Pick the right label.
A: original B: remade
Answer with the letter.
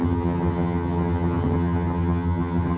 B